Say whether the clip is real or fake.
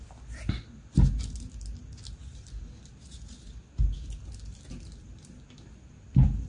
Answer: real